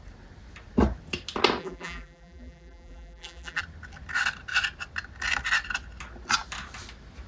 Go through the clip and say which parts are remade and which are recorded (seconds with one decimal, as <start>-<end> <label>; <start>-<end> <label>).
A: 0.0-1.6 recorded; 1.6-3.6 remade; 3.6-7.3 recorded